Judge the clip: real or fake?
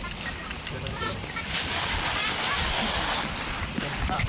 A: real